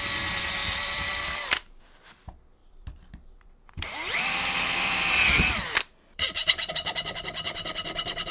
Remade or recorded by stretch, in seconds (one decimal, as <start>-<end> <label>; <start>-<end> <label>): 0.0-0.6 recorded; 0.6-1.8 remade; 1.8-2.6 recorded; 2.6-6.7 remade; 6.7-8.3 recorded